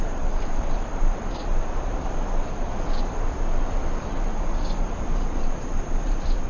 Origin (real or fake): fake